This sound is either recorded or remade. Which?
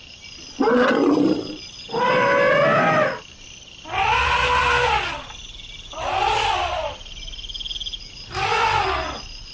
recorded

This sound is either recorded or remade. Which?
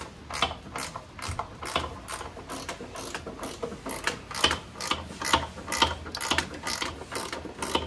recorded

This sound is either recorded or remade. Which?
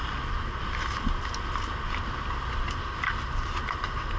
recorded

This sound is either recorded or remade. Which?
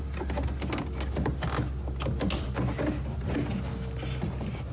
recorded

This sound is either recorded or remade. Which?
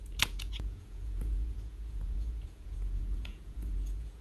remade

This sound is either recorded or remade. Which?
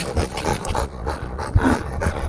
remade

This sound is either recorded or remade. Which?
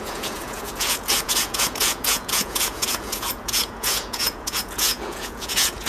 remade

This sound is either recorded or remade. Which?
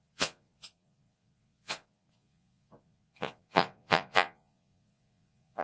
remade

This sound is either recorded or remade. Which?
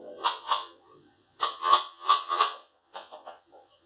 remade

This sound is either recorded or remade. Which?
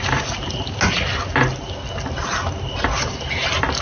recorded